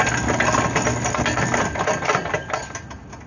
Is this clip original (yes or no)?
yes